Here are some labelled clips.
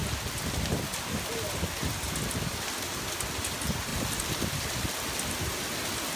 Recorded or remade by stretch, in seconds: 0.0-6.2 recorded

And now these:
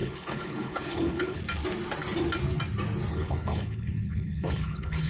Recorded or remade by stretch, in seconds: 0.0-1.4 remade; 1.4-3.1 recorded; 3.1-5.1 remade

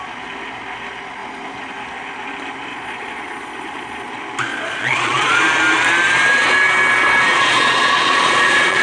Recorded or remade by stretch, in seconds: 0.0-2.7 recorded; 2.7-4.1 remade; 4.1-4.5 recorded; 4.5-5.4 remade; 5.4-7.3 recorded; 7.3-8.8 remade

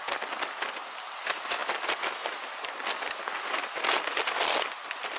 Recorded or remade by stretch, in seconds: 0.0-5.2 recorded

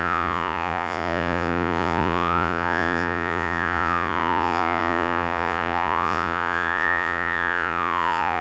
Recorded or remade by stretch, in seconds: 0.0-8.4 remade

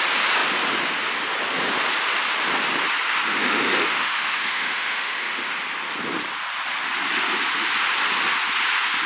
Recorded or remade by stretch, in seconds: 0.0-3.3 recorded; 3.3-5.6 remade; 5.6-9.1 recorded

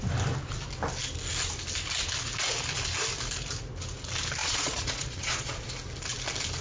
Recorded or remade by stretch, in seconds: 0.0-4.4 recorded; 4.4-5.7 remade; 5.7-6.6 recorded

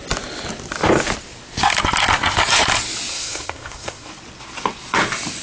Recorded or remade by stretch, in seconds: 0.0-3.1 recorded; 3.1-4.1 remade; 4.1-5.4 recorded